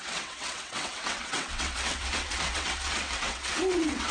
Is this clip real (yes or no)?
no